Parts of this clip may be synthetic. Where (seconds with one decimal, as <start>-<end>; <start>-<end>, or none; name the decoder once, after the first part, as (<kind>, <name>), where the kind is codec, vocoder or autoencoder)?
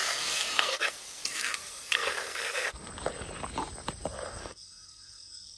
0.0-2.9 (codec, SNAC); 4.3-5.6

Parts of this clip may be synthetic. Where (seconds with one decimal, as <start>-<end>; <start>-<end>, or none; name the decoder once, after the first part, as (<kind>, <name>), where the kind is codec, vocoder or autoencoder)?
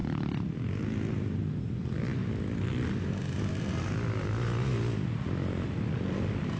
none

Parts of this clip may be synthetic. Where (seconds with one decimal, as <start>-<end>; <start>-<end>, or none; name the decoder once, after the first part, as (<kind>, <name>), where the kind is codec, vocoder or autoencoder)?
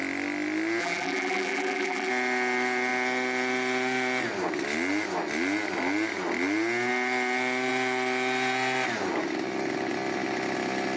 0.8-2.1 (vocoder, BigVGAN v2)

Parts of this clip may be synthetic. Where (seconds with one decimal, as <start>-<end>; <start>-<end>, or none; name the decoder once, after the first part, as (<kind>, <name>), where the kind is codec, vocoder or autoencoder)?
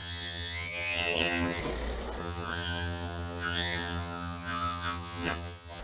0.0-1.6 (vocoder, HiFi-GAN); 2.2-5.8